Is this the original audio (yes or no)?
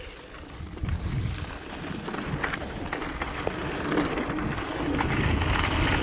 no